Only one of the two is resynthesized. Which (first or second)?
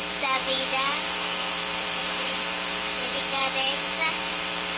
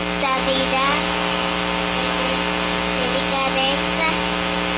first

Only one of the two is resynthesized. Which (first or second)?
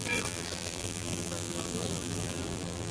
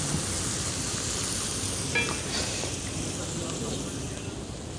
first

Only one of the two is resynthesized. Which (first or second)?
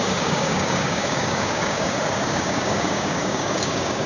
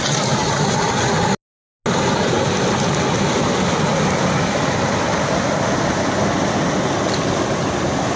first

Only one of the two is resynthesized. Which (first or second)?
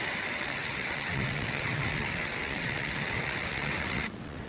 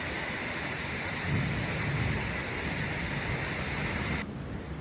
first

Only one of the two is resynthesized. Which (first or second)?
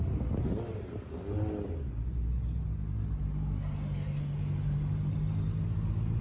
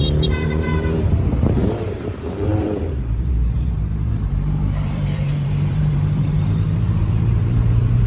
second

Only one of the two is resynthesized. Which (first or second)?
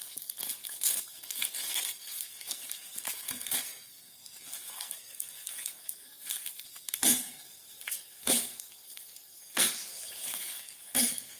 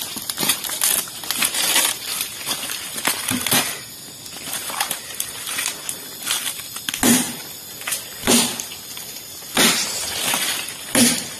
first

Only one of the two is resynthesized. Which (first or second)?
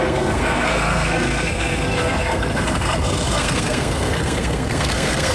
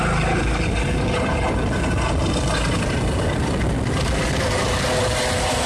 first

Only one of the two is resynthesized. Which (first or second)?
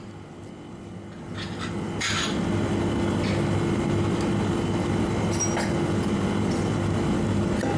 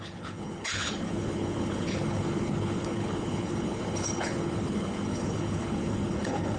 second